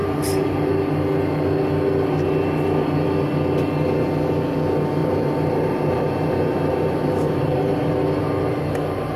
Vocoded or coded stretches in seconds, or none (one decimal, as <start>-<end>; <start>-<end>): 0.0-0.7; 5.0-9.2